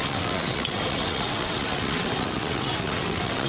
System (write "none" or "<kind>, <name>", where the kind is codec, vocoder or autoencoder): vocoder, WaveNeXt